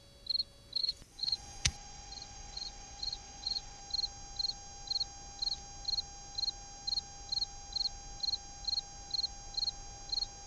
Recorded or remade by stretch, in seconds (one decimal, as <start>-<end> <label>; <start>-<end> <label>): 0.0-0.8 recorded; 0.8-3.8 remade; 3.8-10.5 recorded